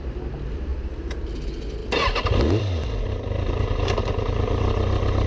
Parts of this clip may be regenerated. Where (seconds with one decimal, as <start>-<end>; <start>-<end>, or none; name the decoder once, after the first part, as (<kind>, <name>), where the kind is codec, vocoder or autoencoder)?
none